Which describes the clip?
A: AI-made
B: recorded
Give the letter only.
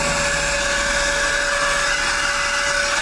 B